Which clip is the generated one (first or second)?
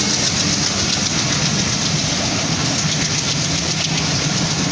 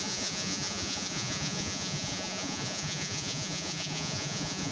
second